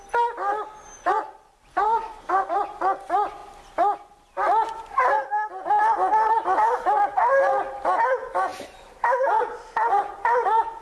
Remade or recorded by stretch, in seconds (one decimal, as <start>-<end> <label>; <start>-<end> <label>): 0.0-1.7 recorded; 1.7-2.6 remade; 2.6-10.8 recorded